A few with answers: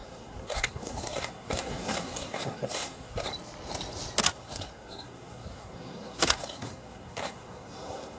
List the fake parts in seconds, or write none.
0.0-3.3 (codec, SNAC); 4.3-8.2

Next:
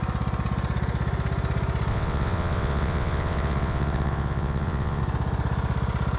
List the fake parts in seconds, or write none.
1.9-5.0 (vocoder, WaveNeXt)

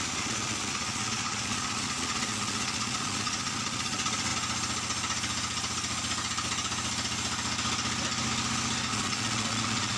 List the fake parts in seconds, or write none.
0.0-4.3 (vocoder, Vocos); 8.9-10.0

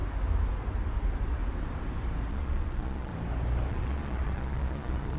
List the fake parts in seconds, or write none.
2.3-3.1 (vocoder, Vocos); 3.7-5.2

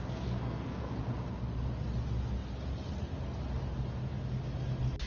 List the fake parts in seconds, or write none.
0.0-0.9 (codec, SNAC)